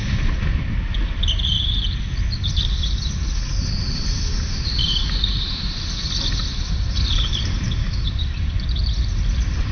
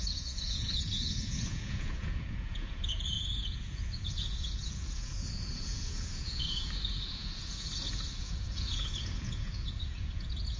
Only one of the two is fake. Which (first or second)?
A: second